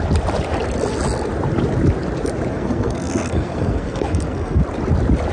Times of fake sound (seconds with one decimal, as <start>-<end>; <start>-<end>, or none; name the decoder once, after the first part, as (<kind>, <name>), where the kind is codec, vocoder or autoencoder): 2.5-4.6 (codec, SNAC)